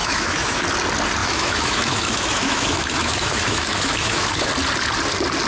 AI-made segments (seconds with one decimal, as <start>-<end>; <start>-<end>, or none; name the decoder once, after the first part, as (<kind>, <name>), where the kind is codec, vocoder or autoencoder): 0.0-0.6 (autoencoder, DAC-VAE); 1.2-4.5